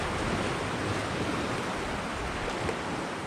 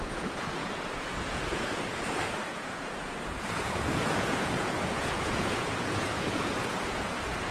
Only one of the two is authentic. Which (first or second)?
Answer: first